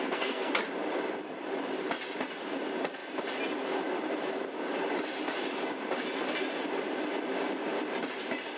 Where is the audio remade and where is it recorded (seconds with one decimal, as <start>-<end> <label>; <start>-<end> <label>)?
0.0-0.5 remade; 0.5-8.6 recorded